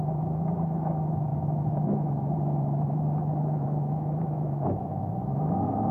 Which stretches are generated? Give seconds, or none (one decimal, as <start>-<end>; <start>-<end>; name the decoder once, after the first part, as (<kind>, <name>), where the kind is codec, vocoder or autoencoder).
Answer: 0.0-5.9 (autoencoder, DAC-VAE)